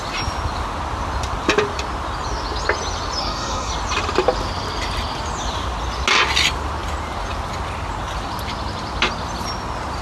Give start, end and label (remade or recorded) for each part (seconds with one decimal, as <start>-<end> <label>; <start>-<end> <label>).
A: 0.0-3.2 recorded; 3.2-3.7 remade; 3.7-10.0 recorded